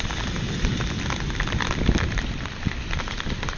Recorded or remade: recorded